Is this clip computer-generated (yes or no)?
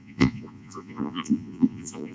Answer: yes